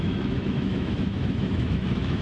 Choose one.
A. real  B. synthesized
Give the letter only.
B